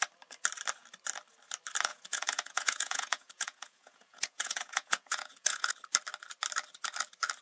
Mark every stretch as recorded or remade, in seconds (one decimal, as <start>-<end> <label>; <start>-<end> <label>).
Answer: 0.0-1.9 recorded; 1.9-5.7 remade; 5.7-7.4 recorded

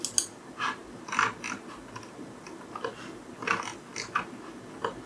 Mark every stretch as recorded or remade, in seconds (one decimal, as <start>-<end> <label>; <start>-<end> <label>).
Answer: 0.0-5.1 recorded

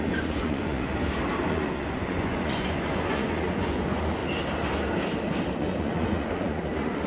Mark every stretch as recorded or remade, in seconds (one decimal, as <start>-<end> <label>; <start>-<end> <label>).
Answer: 0.0-1.0 remade; 1.0-1.5 recorded; 1.5-4.2 remade; 4.2-5.6 recorded; 5.6-7.1 remade

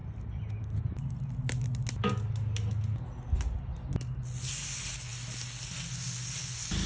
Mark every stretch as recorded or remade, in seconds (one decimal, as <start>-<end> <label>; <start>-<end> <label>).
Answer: 0.0-6.9 recorded